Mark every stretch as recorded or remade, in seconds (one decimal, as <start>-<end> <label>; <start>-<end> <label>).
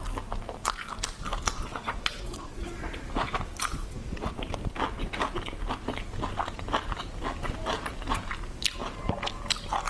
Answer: 0.0-1.7 recorded; 1.7-3.1 remade; 3.1-3.7 recorded; 3.7-4.4 remade; 4.4-9.9 recorded